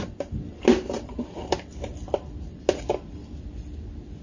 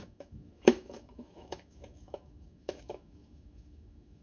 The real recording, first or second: first